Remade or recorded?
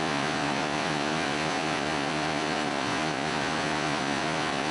remade